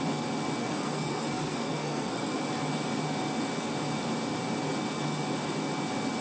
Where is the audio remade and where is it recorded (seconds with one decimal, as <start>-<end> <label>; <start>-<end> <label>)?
0.0-0.6 recorded; 0.6-2.4 remade; 2.4-6.2 recorded